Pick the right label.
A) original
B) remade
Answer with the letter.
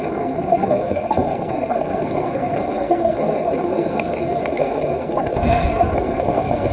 B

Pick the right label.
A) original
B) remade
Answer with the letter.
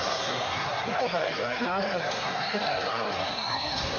B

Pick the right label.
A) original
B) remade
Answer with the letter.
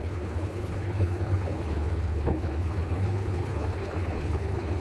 B